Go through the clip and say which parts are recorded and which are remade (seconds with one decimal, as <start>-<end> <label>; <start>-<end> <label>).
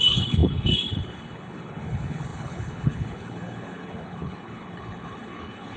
0.0-5.8 remade